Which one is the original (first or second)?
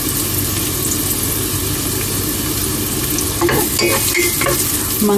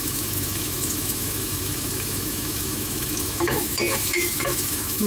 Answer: first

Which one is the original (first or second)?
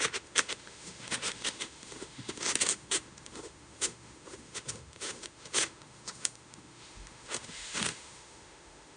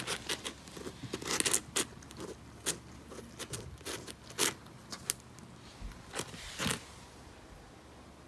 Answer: second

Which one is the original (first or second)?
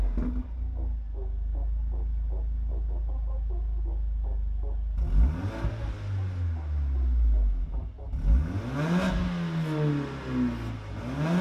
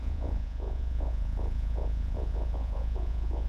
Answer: first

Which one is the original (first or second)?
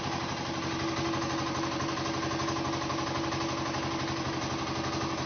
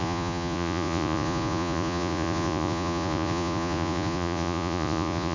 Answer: first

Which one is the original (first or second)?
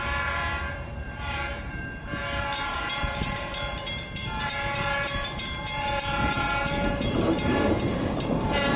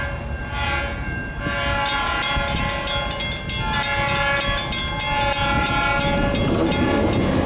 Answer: second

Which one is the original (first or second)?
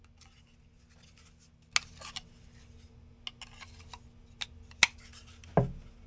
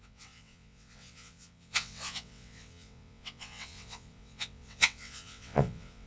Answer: first